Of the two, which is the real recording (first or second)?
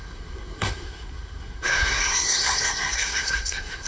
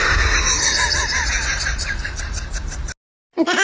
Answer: second